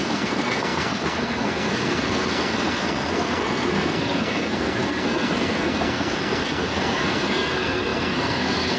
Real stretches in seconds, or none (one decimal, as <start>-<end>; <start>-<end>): none